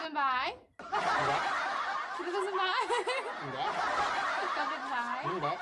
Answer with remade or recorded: recorded